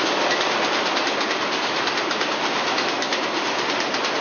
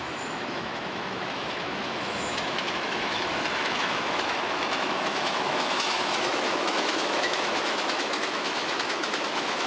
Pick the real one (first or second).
first